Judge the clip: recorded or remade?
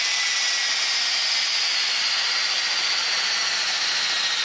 recorded